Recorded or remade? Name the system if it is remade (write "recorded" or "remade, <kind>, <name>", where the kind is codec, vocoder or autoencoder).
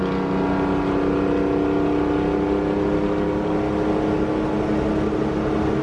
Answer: recorded